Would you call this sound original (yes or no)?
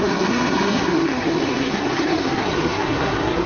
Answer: no